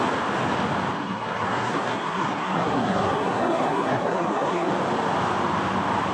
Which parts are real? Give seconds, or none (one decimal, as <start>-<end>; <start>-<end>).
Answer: 0.0-1.0; 4.7-6.1